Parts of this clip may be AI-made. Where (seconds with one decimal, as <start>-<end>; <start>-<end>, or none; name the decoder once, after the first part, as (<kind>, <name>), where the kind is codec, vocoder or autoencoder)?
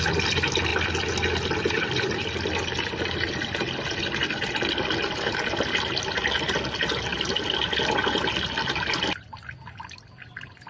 none